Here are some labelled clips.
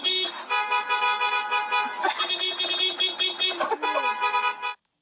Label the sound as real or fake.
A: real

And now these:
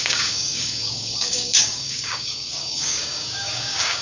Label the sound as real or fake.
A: fake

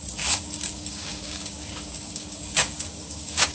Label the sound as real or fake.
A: fake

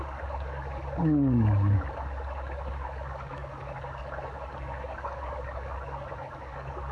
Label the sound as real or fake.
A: fake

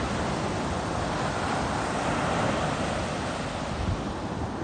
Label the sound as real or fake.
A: real